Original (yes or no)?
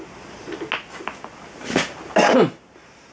yes